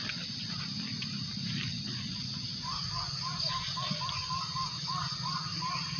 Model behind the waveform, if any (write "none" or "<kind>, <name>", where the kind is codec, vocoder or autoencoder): none